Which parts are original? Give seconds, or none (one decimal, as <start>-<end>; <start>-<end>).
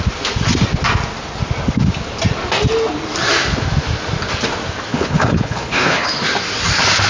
0.0-4.9; 6.1-7.1